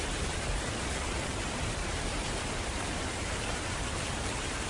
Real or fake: fake